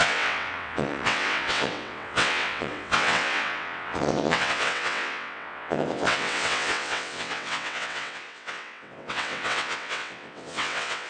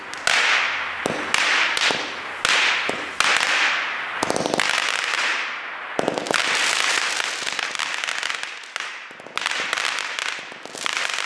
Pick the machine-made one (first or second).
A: first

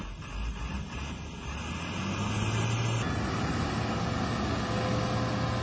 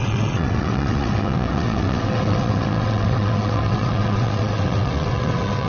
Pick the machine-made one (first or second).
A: second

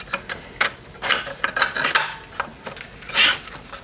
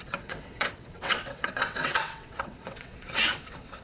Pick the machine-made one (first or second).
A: second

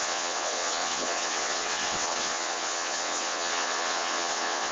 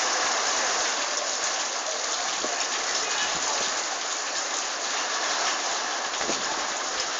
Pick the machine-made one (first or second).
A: first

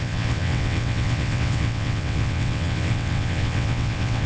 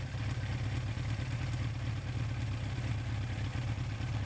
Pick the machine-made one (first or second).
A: first